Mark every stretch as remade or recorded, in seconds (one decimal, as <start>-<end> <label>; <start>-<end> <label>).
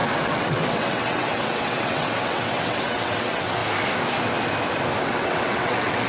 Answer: 0.0-3.6 remade; 3.6-5.0 recorded; 5.0-6.1 remade